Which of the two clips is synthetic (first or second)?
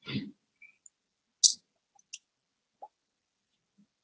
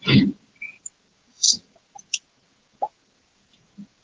second